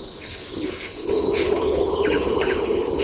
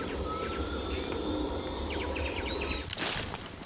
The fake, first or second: first